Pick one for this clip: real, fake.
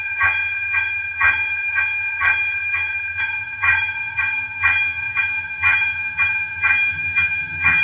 fake